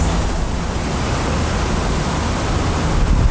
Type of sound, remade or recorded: recorded